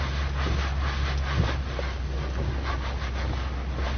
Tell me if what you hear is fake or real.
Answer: real